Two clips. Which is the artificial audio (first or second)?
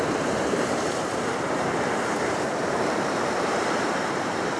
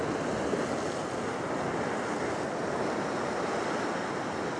first